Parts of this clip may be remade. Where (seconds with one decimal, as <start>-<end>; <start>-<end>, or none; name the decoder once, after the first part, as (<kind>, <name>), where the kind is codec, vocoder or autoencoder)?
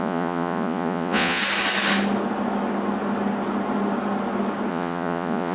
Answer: 0.0-1.4 (vocoder, Vocos); 4.7-5.5